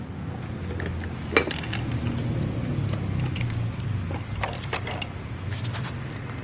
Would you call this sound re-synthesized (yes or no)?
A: no